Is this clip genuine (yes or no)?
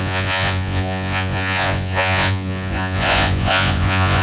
no